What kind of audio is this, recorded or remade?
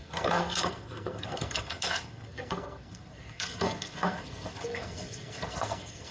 remade